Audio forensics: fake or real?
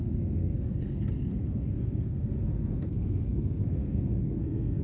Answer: fake